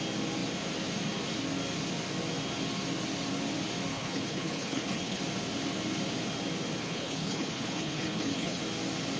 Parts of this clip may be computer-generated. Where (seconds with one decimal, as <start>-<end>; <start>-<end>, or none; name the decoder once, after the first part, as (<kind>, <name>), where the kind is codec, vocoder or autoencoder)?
3.9-5.2 (codec, HILCodec); 6.8-8.6

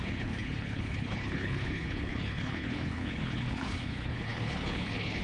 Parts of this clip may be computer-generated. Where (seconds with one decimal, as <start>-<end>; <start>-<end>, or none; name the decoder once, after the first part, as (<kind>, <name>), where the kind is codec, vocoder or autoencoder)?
0.0-5.2 (codec, HILCodec)

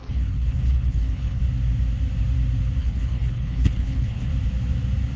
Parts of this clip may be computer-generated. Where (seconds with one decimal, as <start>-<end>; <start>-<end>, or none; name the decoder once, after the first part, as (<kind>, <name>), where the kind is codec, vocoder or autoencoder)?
0.0-1.4 (codec, HILCodec); 2.8-4.3

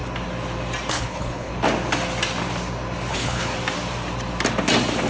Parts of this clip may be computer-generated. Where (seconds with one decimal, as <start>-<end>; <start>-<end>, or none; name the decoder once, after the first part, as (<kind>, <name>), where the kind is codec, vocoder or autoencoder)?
0.9-1.5 (codec, HILCodec); 3.1-3.5

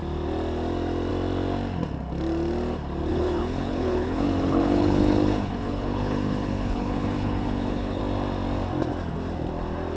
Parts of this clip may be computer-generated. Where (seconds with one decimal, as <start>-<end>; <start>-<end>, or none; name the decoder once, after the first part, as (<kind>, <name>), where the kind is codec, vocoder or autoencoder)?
3.1-8.0 (codec, HILCodec)